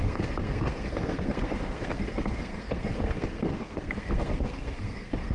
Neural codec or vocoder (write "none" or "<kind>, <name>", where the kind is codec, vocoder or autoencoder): codec, SNAC